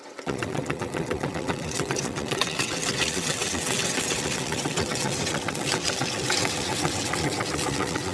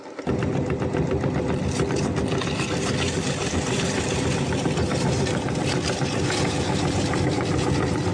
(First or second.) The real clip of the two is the second